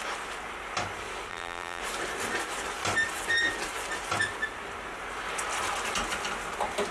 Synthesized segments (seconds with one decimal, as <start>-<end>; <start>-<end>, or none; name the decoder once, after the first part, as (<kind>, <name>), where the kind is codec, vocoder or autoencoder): 1.3-1.8 (vocoder, BigVGAN v2)